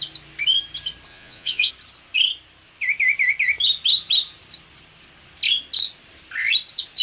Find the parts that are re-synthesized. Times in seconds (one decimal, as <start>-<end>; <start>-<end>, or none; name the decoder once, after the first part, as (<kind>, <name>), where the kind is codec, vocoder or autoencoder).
1.1-1.7 (vocoder, Vocos)